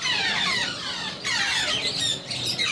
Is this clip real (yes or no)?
yes